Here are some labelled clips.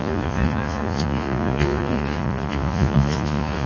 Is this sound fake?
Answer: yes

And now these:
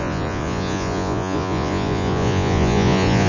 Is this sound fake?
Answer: yes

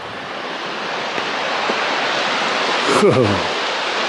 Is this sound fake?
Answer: no